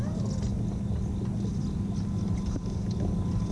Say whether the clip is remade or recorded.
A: recorded